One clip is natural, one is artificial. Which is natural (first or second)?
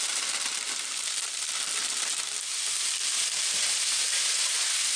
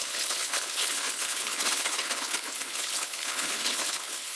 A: first